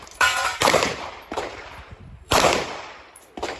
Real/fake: fake